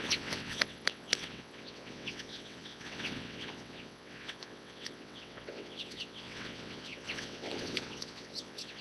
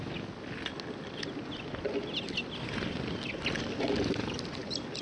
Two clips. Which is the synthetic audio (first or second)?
first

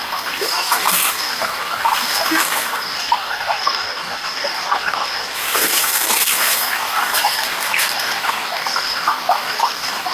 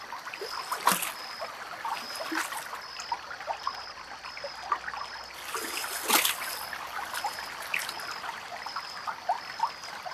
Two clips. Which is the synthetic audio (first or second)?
first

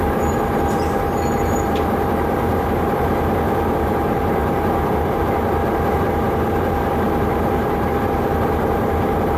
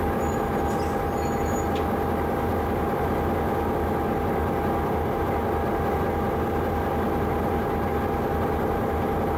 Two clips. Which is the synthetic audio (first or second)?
first